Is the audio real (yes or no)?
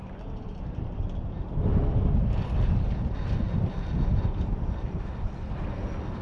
no